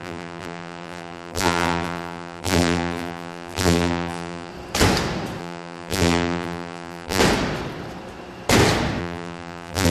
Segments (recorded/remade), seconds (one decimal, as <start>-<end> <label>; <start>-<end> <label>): 0.0-4.5 remade; 4.5-5.4 recorded; 5.4-7.2 remade; 7.2-9.0 recorded; 9.0-9.9 remade